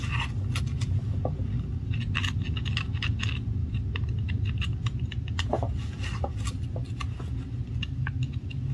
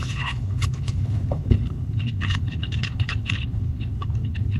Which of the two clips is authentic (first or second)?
first